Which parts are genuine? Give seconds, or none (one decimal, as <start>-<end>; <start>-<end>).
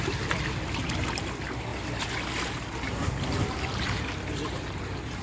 0.0-5.2